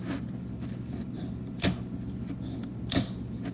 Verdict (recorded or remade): recorded